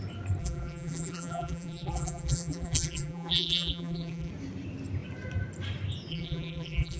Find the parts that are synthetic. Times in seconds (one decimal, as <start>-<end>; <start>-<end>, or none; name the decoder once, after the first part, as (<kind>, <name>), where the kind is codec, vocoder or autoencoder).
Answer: 0.4-4.3 (vocoder, BigVGAN v2); 6.1-7.0